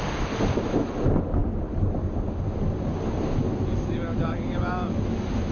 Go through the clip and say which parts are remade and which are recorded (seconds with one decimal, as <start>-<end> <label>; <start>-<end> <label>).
0.0-5.5 recorded